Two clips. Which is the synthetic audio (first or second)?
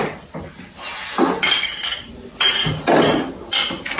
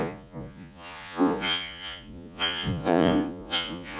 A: second